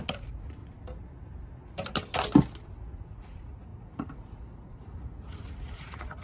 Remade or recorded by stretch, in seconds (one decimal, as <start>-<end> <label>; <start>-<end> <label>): 0.0-0.6 remade; 0.6-2.9 recorded; 2.9-6.2 remade